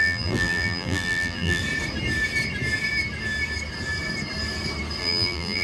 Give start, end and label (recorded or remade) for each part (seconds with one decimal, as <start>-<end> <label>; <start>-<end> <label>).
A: 0.0-1.6 remade; 1.6-5.0 recorded; 5.0-5.6 remade